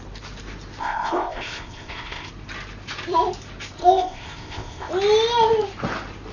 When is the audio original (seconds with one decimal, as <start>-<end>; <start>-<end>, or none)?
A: 0.0-0.8; 2.3-3.8; 4.9-6.3